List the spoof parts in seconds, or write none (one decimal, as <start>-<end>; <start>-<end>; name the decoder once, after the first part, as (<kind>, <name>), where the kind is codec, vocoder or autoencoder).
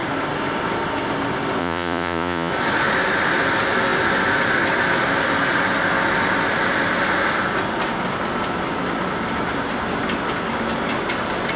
1.6-2.5 (vocoder, Vocos)